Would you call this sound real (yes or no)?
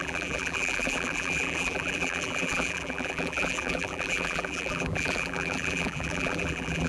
no